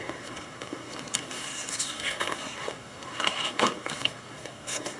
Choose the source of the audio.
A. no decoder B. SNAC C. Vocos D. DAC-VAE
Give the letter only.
B